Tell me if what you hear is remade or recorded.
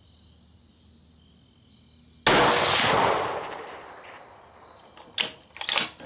recorded